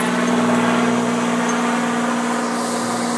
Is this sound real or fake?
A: real